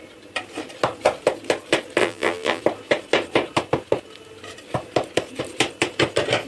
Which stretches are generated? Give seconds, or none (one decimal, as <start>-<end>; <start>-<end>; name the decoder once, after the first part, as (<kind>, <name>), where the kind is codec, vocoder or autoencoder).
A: 2.0-2.6 (vocoder, BigVGAN v2)